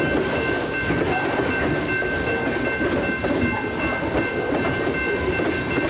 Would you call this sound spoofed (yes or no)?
no